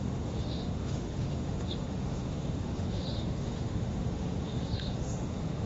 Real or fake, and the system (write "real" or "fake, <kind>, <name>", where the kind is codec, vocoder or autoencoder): fake, autoencoder, DAC-VAE